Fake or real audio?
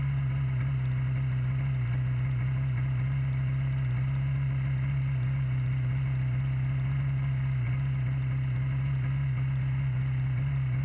real